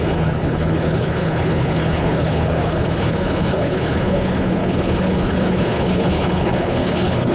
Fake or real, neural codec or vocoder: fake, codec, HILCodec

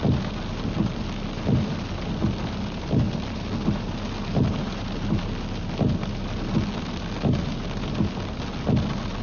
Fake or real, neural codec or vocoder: real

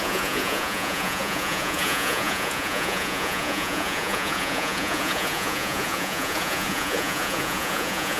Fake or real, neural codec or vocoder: fake, vocoder, Vocos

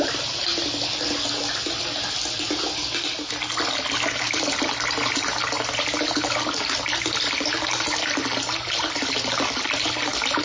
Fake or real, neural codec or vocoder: real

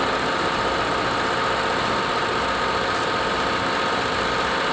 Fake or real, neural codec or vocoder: real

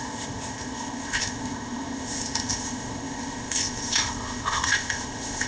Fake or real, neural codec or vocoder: fake, codec, ZipCodec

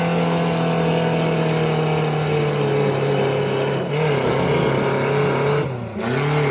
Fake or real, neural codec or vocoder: real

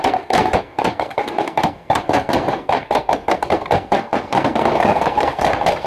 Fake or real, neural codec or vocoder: fake, codec, SNAC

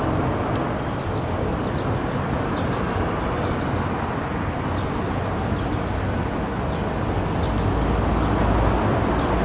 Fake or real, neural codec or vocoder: real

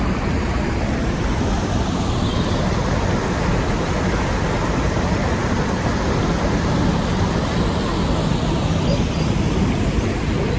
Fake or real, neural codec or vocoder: real